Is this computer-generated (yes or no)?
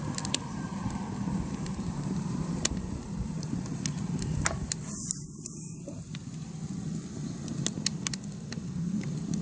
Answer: no